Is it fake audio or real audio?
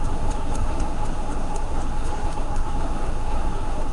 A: fake